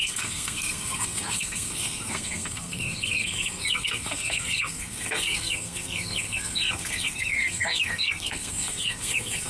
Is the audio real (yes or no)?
no